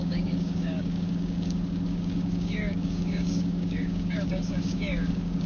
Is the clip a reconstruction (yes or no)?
yes